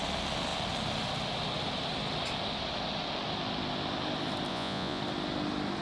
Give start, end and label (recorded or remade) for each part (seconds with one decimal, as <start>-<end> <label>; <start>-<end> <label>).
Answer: 0.0-4.5 recorded; 4.5-5.0 remade; 5.0-5.8 recorded